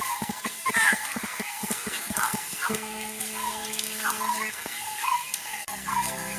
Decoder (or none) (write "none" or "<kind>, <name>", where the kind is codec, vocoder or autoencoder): codec, SNAC